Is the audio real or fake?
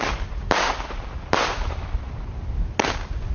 real